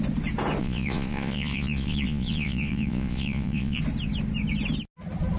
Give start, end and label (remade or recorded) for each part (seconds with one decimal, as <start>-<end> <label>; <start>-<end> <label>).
0.0-0.6 recorded; 0.6-3.8 remade; 3.8-5.4 recorded